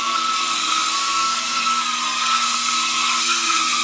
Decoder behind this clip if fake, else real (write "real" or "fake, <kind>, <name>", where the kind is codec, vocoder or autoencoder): fake, codec, SNAC